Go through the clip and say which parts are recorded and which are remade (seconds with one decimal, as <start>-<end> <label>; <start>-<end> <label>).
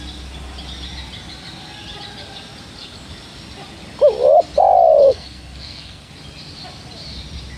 0.0-5.0 recorded; 5.0-6.1 remade; 6.1-7.6 recorded